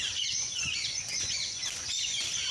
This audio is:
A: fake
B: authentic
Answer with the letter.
A